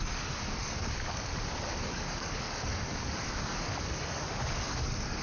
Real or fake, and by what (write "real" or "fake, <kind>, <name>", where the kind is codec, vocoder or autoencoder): fake, codec, DAC